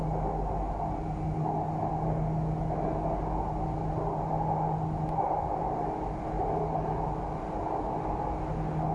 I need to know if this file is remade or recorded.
recorded